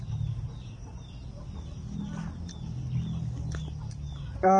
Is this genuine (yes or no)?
yes